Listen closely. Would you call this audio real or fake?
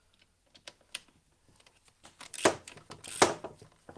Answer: real